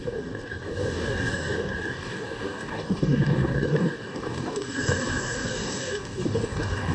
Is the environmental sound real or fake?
fake